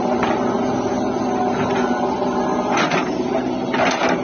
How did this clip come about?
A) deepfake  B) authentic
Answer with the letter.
B